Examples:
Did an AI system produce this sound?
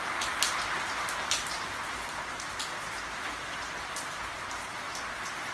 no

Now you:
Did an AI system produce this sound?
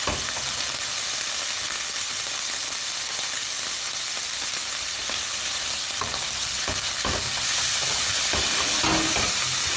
no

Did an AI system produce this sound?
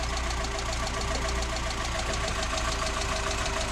no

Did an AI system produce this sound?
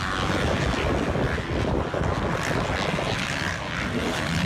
no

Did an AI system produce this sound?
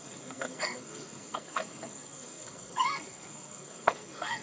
yes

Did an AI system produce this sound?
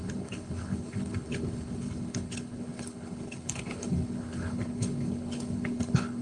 yes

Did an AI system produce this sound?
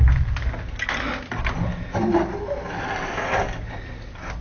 no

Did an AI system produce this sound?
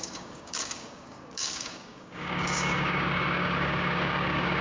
yes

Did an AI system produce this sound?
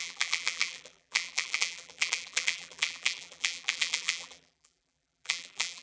yes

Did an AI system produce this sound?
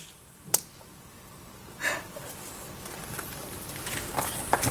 no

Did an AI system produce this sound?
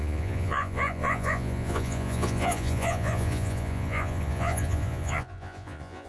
yes